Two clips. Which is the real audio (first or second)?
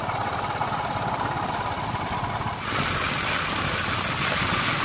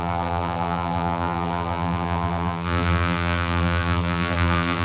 first